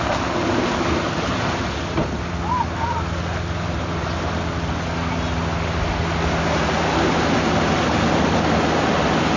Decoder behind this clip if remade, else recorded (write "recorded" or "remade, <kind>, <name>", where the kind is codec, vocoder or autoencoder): recorded